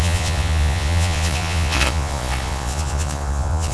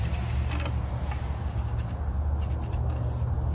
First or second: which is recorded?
second